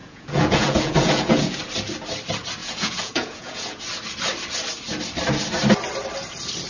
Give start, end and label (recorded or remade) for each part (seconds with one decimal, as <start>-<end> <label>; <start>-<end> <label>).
0.0-1.6 remade; 1.6-2.6 recorded; 2.6-3.8 remade; 3.8-6.7 recorded